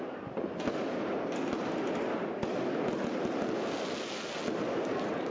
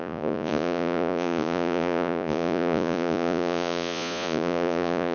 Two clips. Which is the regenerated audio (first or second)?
second